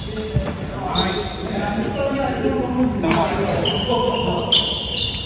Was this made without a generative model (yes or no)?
yes